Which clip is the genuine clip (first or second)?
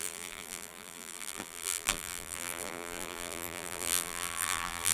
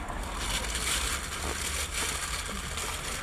second